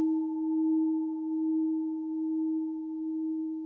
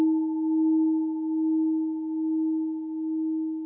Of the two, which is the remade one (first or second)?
first